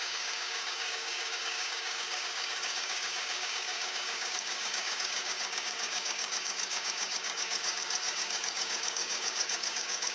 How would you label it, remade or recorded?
remade